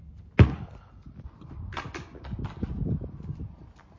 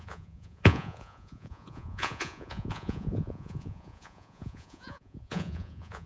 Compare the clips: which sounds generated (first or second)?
second